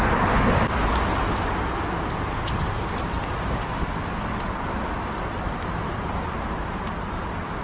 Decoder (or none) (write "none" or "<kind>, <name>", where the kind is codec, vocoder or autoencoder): none